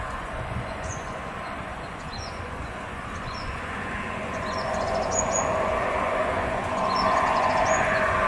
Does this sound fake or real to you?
fake